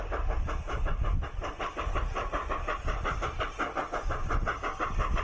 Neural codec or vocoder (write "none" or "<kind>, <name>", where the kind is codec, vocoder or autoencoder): none